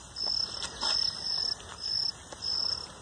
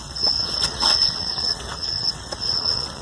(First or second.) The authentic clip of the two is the first